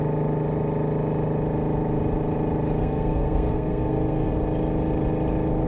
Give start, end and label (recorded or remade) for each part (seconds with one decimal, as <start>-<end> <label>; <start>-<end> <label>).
0.0-2.8 recorded; 2.8-4.3 remade; 4.3-5.7 recorded